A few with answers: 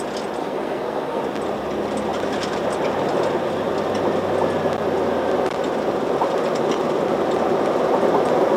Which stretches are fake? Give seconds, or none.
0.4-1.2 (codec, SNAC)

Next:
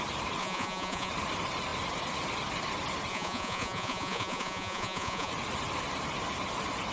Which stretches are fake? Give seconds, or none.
0.4-1.1 (vocoder, Vocos); 3.1-5.3

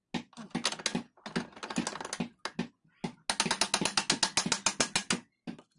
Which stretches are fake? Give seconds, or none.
none